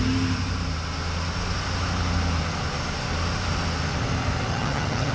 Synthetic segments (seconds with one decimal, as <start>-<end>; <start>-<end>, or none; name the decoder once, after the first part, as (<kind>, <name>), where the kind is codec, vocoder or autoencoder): 4.5-5.1 (vocoder, HiFi-GAN)